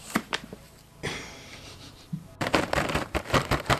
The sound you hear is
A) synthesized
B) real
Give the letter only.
A